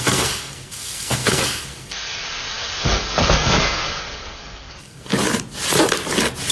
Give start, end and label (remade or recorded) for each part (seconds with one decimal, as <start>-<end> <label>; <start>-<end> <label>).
0.0-5.1 remade; 5.1-6.5 recorded